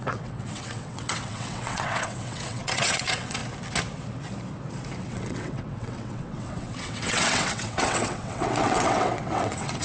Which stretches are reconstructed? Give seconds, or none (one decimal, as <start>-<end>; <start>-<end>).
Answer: 0.0-3.4; 5.0-9.8